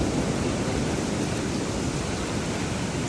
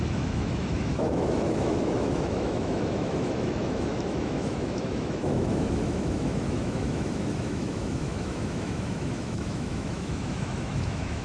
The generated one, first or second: second